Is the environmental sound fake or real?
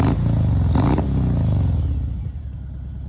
real